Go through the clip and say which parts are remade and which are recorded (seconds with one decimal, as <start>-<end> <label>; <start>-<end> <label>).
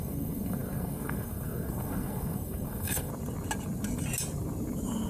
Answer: 0.0-3.1 remade; 3.1-5.1 recorded